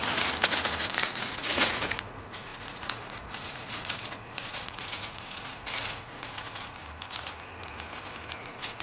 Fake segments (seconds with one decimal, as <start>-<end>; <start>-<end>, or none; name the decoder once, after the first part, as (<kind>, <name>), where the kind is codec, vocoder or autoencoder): 0.9-6.8 (vocoder, Vocos); 8.4-8.8

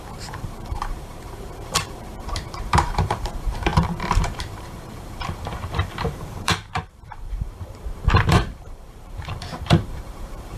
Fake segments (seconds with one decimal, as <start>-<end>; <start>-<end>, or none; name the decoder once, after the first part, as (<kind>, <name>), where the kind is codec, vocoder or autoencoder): 0.0-10.6 (vocoder, BigVGAN v2)

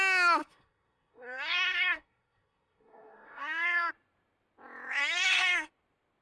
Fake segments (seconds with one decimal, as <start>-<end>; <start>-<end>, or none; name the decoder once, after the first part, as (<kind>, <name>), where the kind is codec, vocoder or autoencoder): 0.4-3.9 (codec, SNAC); 5.0-5.7

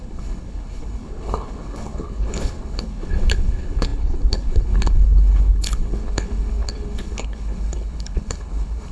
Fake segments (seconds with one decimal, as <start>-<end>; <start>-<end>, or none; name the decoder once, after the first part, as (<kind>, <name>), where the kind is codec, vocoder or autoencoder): 0.0-8.9 (codec, HILCodec)

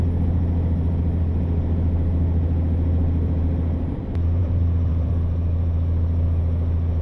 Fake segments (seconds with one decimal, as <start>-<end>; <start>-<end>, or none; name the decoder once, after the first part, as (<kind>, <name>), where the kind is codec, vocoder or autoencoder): 4.4-5.1 (vocoder, BigVGAN v2)

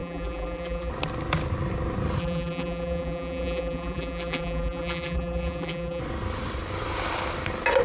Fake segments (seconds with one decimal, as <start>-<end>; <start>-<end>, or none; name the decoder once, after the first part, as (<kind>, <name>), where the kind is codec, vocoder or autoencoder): 0.0-0.9 (vocoder, BigVGAN v2); 2.2-6.0

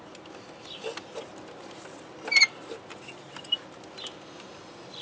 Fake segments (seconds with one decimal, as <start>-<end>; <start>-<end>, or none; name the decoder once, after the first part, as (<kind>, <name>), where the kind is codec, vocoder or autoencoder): none